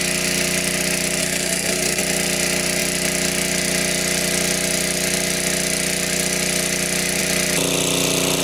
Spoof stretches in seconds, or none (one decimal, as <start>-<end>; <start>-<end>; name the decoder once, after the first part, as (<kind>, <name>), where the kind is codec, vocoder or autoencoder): 1.2-2.0 (codec, SNAC)